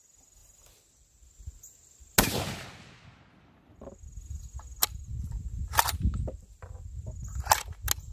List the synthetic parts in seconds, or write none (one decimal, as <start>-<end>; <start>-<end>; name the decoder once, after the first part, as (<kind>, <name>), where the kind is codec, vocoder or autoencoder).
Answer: none